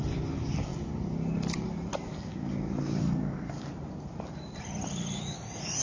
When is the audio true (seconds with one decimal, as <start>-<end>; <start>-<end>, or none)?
0.0-3.0; 3.5-5.8